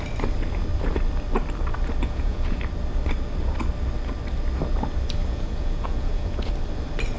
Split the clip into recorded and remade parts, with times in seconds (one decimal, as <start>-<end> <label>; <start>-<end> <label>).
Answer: 0.0-2.0 recorded; 2.0-2.6 remade; 2.6-5.2 recorded; 5.2-6.5 remade; 6.5-7.2 recorded